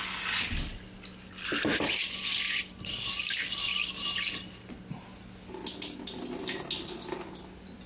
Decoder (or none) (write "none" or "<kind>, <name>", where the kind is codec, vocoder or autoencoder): none